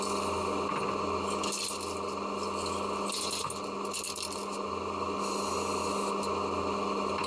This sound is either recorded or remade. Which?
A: recorded